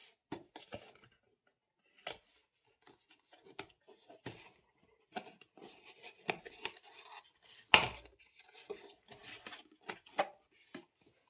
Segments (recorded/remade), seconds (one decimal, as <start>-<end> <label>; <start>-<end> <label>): 0.0-11.3 recorded